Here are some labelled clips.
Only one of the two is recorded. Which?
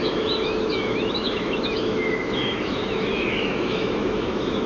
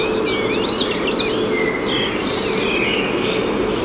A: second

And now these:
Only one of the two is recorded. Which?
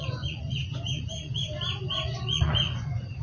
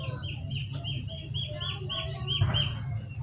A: second